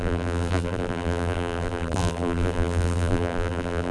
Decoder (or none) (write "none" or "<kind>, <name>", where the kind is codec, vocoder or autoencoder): vocoder, BigVGAN v2